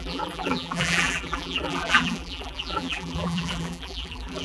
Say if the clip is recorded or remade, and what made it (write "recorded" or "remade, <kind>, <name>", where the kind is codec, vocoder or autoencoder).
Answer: remade, vocoder, BigVGAN v2